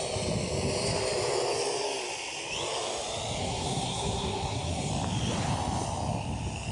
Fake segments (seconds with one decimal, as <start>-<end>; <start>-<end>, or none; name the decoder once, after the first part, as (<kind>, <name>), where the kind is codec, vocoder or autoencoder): 3.4-4.9 (codec, SNAC)